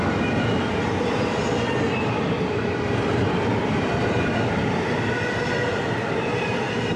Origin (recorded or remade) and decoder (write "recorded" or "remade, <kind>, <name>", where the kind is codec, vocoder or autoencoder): remade, vocoder, BigVGAN v2